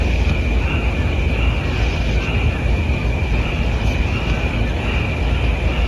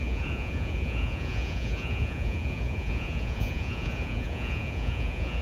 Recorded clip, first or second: first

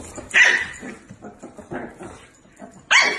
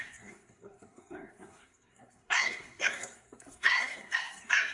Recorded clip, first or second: first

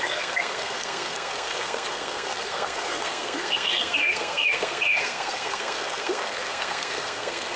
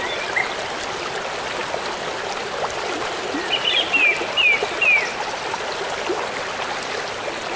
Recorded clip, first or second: second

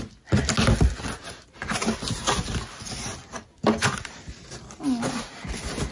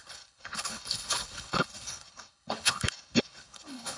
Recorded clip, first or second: first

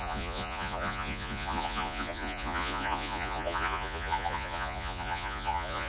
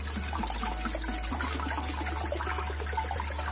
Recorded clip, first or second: second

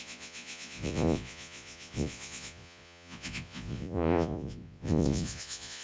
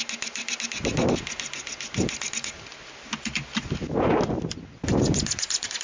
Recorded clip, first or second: second